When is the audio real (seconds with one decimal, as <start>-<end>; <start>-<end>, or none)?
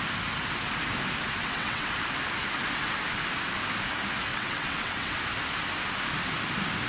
0.0-1.4; 1.9-4.3; 5.1-6.9